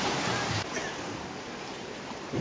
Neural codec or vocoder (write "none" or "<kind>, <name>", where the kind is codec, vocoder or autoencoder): vocoder, BigVGAN v2